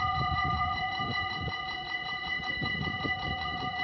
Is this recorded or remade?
remade